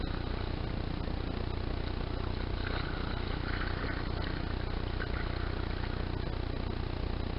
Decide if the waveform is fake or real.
real